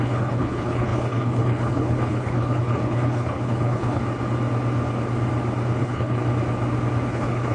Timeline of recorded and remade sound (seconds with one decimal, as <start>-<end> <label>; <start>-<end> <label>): 0.0-4.0 remade; 4.0-5.8 recorded; 5.8-6.2 remade; 6.2-7.1 recorded; 7.1-7.5 remade